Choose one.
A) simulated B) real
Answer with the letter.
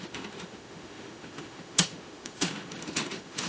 A